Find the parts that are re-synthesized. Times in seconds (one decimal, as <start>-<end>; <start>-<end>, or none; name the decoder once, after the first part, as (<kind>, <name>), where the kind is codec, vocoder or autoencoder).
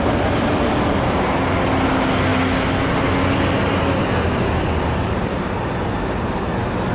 none